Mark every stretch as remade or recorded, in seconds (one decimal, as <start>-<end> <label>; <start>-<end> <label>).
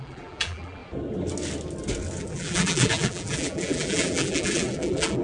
0.0-0.8 remade; 0.8-2.2 recorded; 2.2-5.2 remade